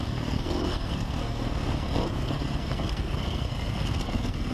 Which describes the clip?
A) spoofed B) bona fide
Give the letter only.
A